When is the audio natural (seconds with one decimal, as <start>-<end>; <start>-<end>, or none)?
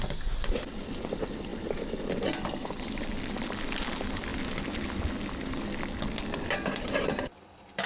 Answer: 1.5-2.7; 4.3-6.5